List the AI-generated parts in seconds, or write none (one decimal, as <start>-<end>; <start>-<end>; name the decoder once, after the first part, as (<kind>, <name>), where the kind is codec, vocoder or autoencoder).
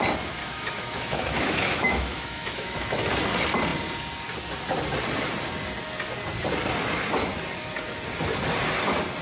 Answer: 0.4-3.1 (autoencoder, DAC-VAE)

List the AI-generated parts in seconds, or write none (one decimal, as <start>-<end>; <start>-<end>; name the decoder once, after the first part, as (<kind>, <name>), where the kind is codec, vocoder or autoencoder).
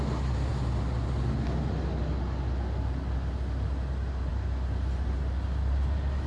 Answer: none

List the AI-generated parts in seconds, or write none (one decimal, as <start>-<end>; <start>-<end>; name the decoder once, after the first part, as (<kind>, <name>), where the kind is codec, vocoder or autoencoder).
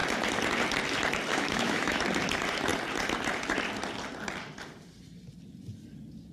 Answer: 1.3-2.0 (autoencoder, DAC-VAE)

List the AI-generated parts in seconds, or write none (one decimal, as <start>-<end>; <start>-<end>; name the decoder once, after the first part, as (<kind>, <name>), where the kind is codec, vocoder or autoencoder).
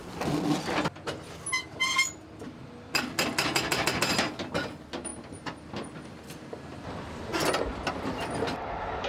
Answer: none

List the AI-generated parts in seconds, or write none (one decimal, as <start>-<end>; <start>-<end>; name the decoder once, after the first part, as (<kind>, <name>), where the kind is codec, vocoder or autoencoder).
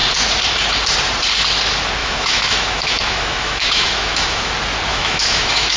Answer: 2.0-4.5 (autoencoder, DAC-VAE); 4.9-5.8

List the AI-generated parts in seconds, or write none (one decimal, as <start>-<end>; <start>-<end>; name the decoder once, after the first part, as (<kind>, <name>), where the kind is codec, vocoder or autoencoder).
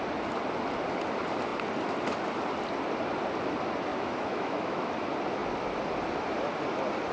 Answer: 3.9-4.9 (autoencoder, DAC-VAE)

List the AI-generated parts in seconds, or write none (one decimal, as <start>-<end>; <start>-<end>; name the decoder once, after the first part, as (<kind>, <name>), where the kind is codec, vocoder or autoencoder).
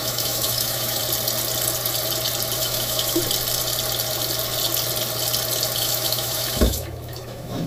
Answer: 0.0-1.0 (autoencoder, DAC-VAE); 2.6-3.2; 5.8-7.7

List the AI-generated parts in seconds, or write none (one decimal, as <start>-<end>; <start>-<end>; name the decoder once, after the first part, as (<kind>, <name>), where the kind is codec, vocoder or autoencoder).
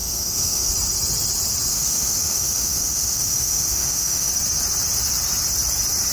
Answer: 0.0-0.7 (autoencoder, DAC-VAE); 1.7-4.3